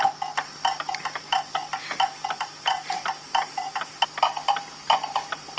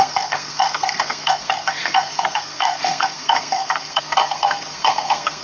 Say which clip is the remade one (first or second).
second